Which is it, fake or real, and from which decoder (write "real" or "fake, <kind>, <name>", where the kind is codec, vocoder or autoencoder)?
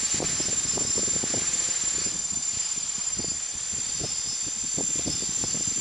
real